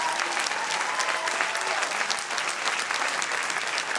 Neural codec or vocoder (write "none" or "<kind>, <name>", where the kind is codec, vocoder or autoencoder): none